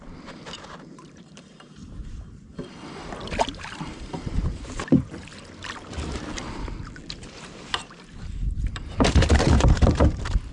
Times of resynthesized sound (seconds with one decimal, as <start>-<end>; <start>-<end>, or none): 0.0-2.5; 3.4-4.8; 8.1-10.5